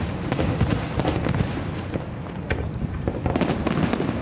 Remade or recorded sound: recorded